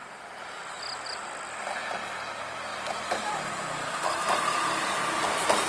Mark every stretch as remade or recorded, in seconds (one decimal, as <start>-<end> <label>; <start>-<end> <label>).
0.0-2.7 recorded; 2.7-3.5 remade; 3.5-5.7 recorded